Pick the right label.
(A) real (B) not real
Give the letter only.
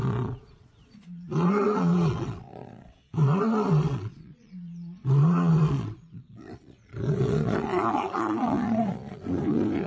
B